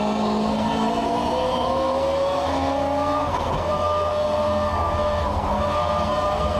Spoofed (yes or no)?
yes